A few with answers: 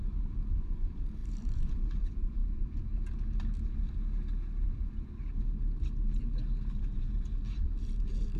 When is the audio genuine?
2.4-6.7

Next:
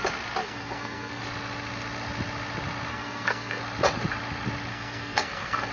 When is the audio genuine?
0.0-0.4; 1.2-2.9; 3.6-4.7

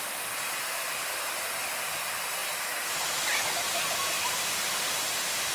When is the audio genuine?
0.0-5.5

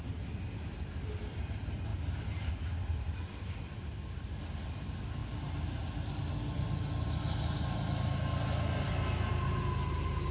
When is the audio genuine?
0.0-10.3

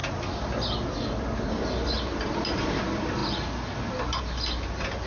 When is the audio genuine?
0.0-5.1

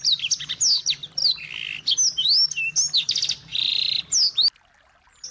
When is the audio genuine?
0.0-5.3